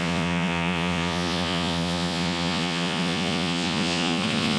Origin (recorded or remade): remade